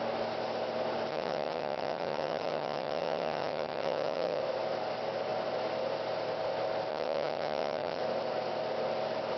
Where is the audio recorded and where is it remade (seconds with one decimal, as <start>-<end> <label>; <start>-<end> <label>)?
0.0-1.1 recorded; 1.1-4.4 remade; 4.4-6.9 recorded; 6.9-8.0 remade; 8.0-9.4 recorded